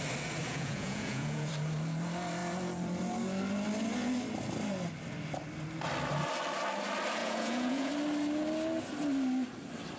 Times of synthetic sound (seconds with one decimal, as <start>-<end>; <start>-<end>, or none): 0.5-1.5; 7.2-7.9